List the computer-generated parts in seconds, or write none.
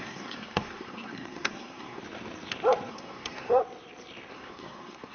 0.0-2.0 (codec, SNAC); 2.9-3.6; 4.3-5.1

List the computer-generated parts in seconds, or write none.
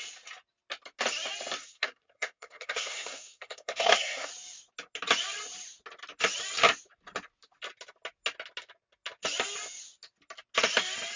1.6-4.3 (codec, SNAC)